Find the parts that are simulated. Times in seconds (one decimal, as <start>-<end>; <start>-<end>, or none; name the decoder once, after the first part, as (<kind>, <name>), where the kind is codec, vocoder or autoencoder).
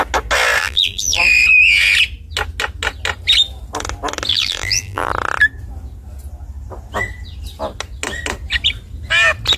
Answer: 0.6-1.2 (vocoder, BigVGAN v2); 4.3-5.1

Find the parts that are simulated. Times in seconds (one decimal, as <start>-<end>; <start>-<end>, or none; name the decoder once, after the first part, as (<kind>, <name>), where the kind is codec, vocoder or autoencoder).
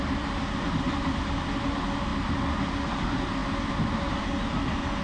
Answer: none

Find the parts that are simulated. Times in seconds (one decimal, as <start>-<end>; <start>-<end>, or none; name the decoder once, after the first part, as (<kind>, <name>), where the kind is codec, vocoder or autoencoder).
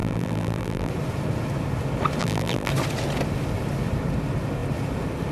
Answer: 0.0-0.9 (vocoder, BigVGAN v2); 2.2-2.7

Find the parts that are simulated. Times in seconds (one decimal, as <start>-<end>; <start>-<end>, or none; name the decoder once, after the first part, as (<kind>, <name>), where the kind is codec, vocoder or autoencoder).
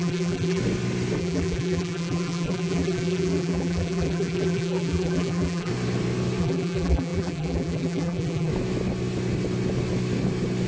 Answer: 0.0-0.6 (vocoder, BigVGAN v2); 1.2-5.7; 6.4-8.5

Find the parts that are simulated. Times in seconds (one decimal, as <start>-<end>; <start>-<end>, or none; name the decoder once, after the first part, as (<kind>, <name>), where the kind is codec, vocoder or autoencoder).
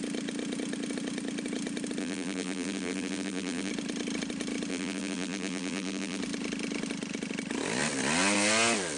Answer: 2.0-3.7 (vocoder, BigVGAN v2); 4.7-6.2